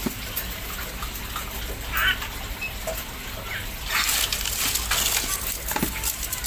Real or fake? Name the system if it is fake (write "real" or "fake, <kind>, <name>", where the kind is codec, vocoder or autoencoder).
real